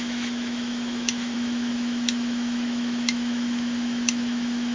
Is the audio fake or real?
fake